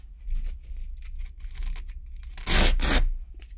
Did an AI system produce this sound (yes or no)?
no